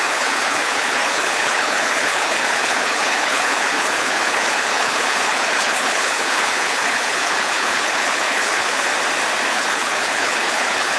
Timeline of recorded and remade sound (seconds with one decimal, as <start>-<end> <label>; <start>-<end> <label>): 0.0-8.9 remade; 8.9-9.5 recorded; 9.5-11.0 remade